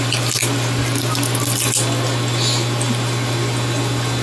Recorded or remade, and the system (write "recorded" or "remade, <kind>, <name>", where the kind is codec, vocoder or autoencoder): recorded